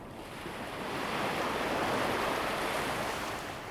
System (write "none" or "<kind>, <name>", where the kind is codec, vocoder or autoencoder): none